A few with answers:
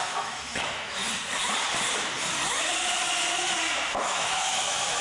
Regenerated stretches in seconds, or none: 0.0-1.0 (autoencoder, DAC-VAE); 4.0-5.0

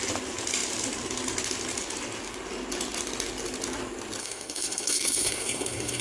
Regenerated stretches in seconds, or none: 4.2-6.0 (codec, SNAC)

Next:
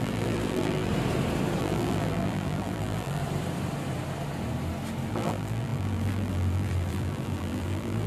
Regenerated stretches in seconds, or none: 0.0-0.9 (vocoder, BigVGAN v2); 1.6-3.2; 5.1-8.1

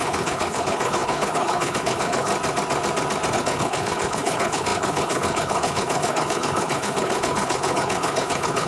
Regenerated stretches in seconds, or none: 0.0-2.3 (codec, HILCodec); 3.3-8.7

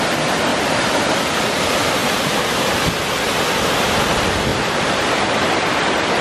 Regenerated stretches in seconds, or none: 0.5-1.0 (vocoder, BigVGAN v2); 2.0-2.8; 4.5-5.1

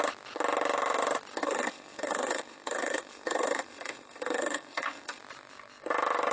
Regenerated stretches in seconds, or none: 1.4-5.2 (codec, SNAC)